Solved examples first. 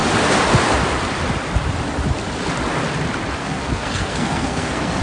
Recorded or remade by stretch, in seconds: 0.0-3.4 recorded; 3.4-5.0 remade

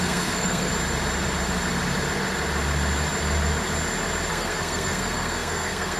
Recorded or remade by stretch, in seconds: 0.0-0.7 remade; 0.7-4.3 recorded; 4.3-6.0 remade

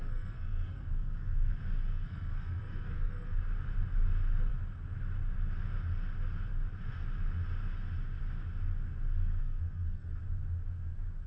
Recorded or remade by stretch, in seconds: 0.0-1.5 remade; 1.5-1.9 recorded; 1.9-3.4 remade; 3.4-9.4 recorded; 9.4-10.2 remade; 10.2-11.3 recorded

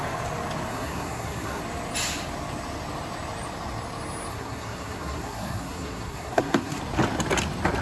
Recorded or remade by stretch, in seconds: 0.0-0.7 recorded; 0.7-1.6 remade; 1.6-4.3 recorded; 4.3-6.8 remade; 6.8-7.8 recorded